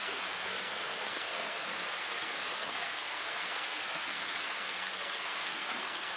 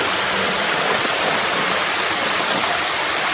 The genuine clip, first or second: second